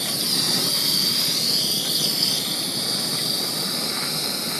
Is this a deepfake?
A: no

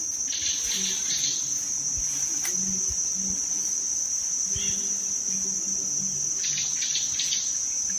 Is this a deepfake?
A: no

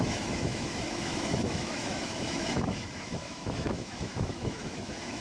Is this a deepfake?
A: yes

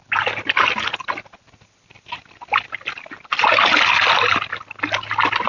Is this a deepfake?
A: no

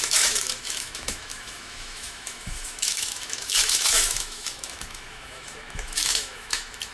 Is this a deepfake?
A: yes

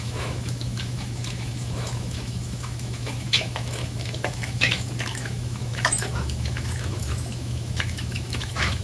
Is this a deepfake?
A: yes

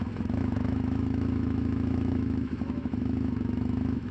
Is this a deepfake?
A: yes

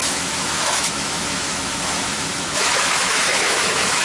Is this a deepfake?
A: yes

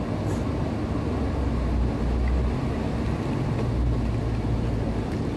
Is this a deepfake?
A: no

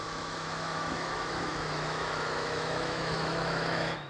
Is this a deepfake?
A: yes